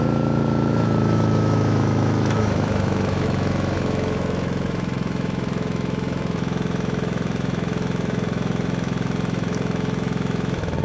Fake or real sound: fake